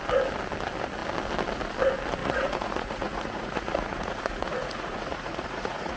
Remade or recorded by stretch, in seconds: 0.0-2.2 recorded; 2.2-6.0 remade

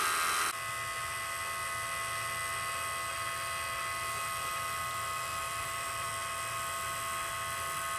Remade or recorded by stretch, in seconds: 0.0-5.3 recorded; 5.3-6.1 remade; 6.1-8.0 recorded